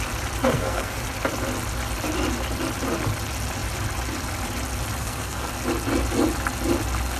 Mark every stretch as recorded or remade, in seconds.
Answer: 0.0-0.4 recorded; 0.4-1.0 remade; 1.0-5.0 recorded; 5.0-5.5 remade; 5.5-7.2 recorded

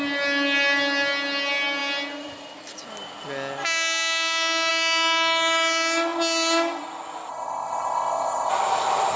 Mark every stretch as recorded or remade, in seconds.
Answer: 0.0-7.3 recorded; 7.3-8.5 remade; 8.5-9.2 recorded

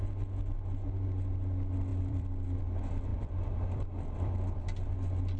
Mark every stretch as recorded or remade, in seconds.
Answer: 0.0-1.9 recorded; 1.9-2.6 remade; 2.6-3.1 recorded; 3.1-5.4 remade